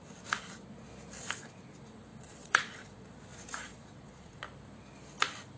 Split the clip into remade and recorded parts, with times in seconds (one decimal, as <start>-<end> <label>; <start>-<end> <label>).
0.0-2.1 recorded; 2.1-3.1 remade; 3.1-3.7 recorded; 3.7-4.4 remade; 4.4-5.6 recorded